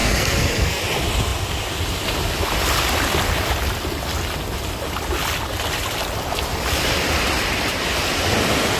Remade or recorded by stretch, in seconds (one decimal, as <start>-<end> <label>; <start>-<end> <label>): 0.0-0.8 remade; 0.8-8.8 recorded